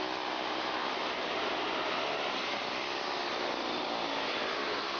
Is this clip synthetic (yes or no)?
no